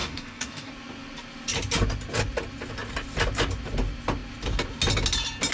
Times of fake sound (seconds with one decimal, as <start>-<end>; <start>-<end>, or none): 0.0-0.7